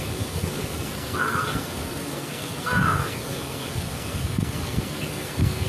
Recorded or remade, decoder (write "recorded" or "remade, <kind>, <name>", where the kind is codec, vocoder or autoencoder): remade, codec, SNAC